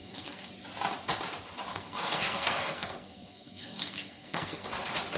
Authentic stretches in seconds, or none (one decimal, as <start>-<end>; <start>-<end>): 0.5-1.7; 4.8-5.2

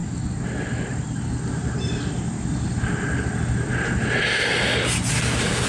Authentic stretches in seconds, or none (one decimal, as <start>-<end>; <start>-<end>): 0.0-5.7

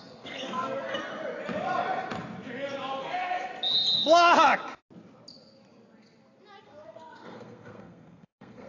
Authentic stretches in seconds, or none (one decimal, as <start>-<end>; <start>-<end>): 1.1-3.0; 3.5-6.6